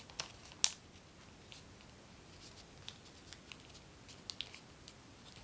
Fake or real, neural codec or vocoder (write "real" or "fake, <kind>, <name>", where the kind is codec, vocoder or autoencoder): real